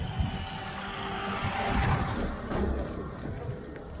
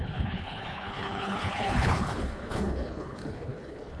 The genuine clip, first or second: first